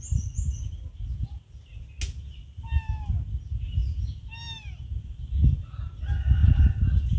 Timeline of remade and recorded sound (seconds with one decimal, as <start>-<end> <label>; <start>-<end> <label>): 0.0-7.2 recorded